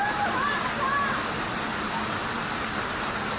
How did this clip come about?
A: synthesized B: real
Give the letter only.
B